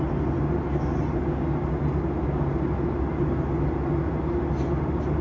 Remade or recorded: recorded